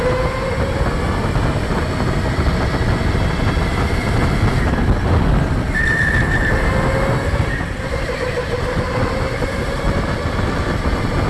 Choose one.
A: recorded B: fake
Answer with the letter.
A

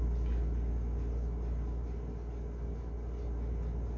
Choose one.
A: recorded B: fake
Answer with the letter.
A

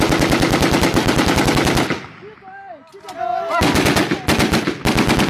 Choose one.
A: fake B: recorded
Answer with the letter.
B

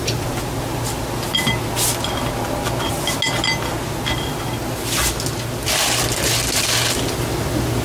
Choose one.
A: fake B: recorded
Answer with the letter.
B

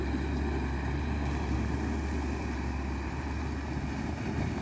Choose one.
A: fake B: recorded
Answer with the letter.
B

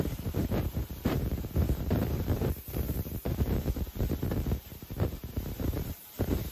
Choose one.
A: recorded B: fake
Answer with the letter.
B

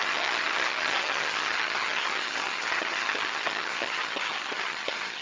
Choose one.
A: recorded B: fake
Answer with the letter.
B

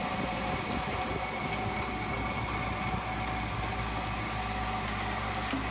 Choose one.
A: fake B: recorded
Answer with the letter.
B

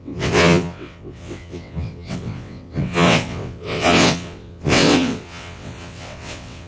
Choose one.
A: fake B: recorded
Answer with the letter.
A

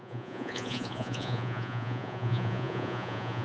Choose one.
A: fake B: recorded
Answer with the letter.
A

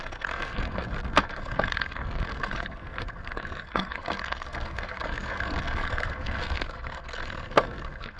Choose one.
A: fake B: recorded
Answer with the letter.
A